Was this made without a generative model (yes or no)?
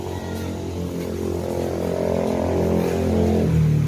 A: yes